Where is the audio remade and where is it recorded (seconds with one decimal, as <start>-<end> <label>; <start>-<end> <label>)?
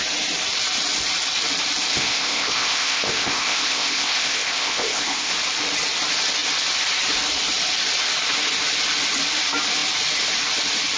0.0-1.9 recorded; 1.9-5.3 remade; 5.3-11.0 recorded